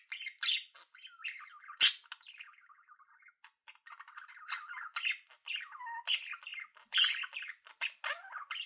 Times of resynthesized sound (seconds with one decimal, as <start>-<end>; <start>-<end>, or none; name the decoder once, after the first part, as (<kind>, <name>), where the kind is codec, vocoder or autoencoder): none